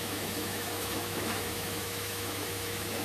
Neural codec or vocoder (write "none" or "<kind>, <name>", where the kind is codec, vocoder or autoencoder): autoencoder, DAC-VAE